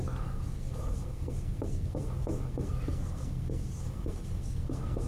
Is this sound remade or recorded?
remade